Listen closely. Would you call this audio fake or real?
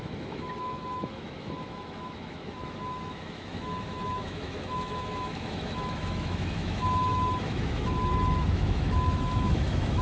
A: fake